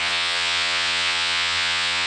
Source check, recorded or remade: remade